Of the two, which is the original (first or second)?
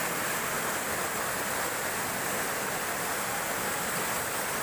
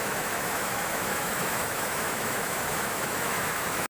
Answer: first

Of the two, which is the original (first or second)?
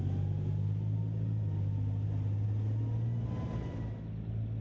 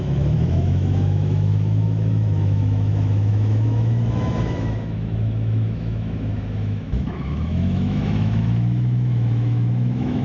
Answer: first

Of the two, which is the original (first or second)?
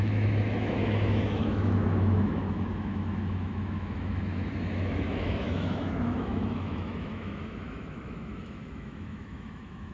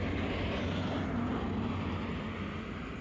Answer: second